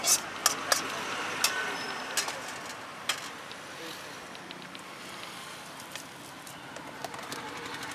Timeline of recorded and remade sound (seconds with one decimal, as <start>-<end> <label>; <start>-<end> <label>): 0.0-7.9 recorded

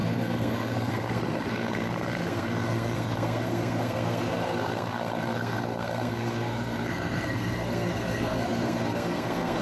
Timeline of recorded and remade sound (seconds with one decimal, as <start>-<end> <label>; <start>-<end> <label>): 0.0-9.6 remade

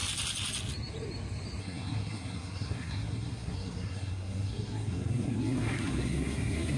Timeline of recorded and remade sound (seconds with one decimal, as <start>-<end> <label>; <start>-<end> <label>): 0.0-1.6 recorded; 1.6-6.8 remade